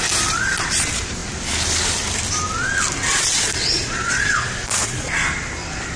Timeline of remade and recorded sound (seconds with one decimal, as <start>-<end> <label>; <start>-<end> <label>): 0.0-3.1 recorded; 3.1-5.1 remade; 5.1-6.0 recorded